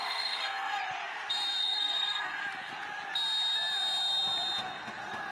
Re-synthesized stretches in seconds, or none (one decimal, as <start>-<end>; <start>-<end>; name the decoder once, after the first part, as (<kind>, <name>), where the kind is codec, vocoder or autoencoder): 0.0-0.8 (codec, SNAC); 1.6-2.4